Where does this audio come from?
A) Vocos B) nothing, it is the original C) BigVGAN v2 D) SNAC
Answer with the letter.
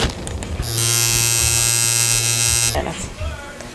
B